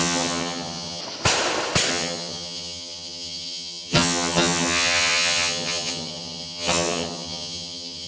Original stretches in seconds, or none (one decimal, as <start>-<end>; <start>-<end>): 1.0-1.9